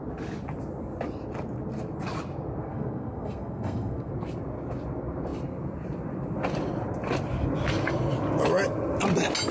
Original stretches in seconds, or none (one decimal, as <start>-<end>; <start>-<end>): 0.0-2.6; 4.1-9.5